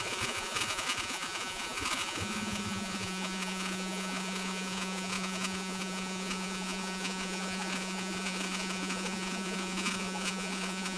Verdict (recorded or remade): remade